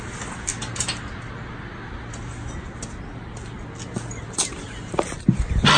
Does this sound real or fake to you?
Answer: real